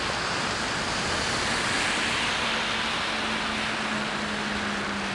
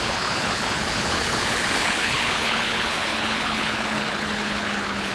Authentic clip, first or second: first